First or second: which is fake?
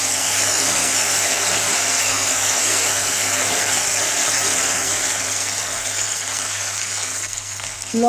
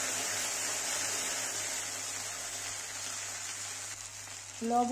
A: first